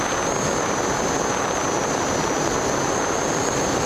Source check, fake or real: real